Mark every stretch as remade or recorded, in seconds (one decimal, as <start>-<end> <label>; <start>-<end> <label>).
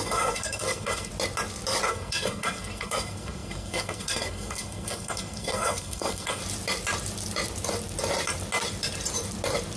0.0-1.1 remade; 1.1-1.9 recorded; 1.9-6.4 remade; 6.4-9.8 recorded